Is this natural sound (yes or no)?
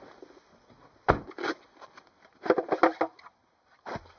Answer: yes